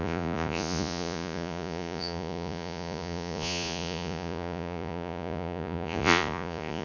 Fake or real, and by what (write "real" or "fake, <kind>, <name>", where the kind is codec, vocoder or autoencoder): fake, vocoder, Vocos